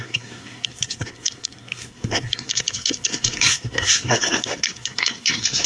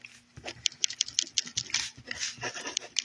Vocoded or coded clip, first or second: first